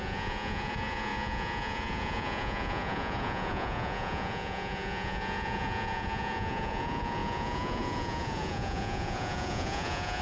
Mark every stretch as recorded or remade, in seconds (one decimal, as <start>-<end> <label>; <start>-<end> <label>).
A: 0.0-10.2 remade